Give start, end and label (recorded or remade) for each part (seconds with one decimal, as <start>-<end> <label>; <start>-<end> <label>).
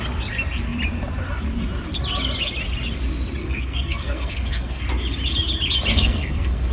0.0-3.4 recorded; 3.4-4.8 remade; 4.8-5.9 recorded; 5.9-6.7 remade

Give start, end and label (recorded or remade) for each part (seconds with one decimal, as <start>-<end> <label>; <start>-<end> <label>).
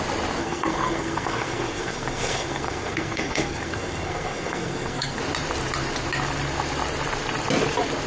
0.0-0.4 recorded; 0.4-5.2 remade; 5.2-8.1 recorded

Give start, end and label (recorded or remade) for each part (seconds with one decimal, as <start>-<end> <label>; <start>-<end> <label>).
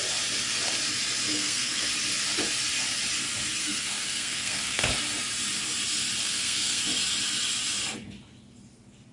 0.0-1.3 recorded; 1.3-1.9 remade; 1.9-3.6 recorded; 3.6-4.8 remade; 4.8-6.2 recorded; 6.2-6.8 remade; 6.8-9.1 recorded